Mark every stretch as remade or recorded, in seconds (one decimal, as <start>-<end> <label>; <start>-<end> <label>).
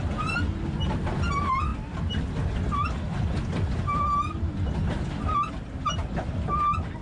0.0-7.0 recorded